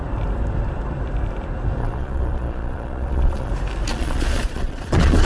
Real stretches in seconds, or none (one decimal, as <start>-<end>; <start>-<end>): 0.0-1.8; 3.5-3.9